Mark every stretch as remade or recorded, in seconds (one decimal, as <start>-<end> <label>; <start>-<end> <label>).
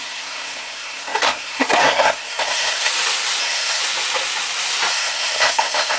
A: 0.0-2.9 remade; 2.9-3.4 recorded; 3.4-3.8 remade; 3.8-4.9 recorded; 4.9-6.0 remade